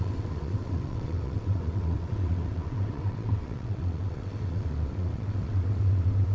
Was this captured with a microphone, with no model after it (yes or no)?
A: no